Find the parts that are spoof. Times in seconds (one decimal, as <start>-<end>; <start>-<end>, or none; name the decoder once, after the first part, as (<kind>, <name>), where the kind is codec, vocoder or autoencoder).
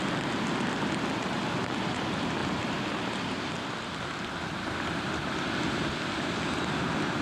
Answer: none